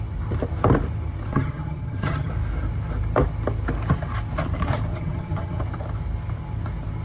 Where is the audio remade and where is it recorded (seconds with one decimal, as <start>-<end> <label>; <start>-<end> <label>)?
0.0-1.3 recorded; 1.3-2.3 remade; 2.3-4.9 recorded; 4.9-5.6 remade; 5.6-7.0 recorded